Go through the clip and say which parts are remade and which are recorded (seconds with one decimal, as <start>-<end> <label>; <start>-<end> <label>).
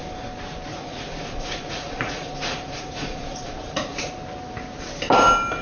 0.0-0.7 recorded; 0.7-4.1 remade; 4.1-5.6 recorded